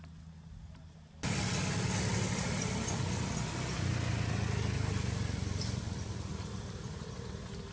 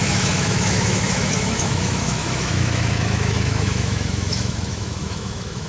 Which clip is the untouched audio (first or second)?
first